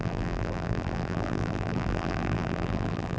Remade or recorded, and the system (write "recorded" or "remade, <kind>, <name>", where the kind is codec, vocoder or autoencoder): remade, vocoder, BigVGAN v2